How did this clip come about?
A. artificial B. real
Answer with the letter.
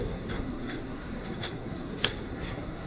A